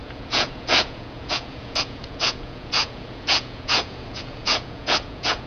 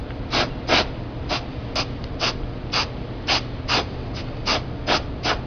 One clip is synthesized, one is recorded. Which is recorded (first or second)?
second